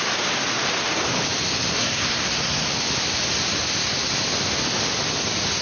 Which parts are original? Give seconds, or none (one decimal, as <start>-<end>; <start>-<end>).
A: 0.0-1.8; 2.7-5.6